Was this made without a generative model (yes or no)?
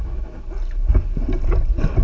yes